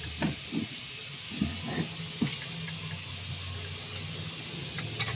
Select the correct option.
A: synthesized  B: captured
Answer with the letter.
B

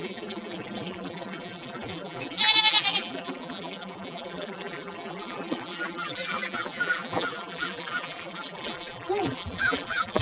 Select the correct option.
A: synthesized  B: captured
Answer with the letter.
A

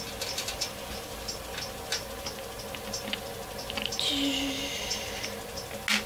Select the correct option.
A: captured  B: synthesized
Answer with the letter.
A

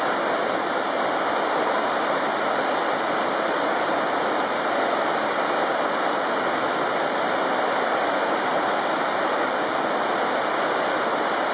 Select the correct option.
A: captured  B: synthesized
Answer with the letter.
A